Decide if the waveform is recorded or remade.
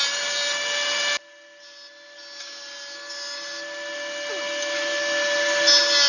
recorded